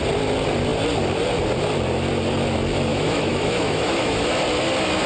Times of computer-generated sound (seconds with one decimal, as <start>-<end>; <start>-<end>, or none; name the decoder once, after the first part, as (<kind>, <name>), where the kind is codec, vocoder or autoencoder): 2.9-4.3 (autoencoder, DAC-VAE)